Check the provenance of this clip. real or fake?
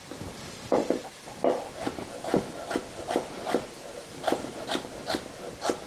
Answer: real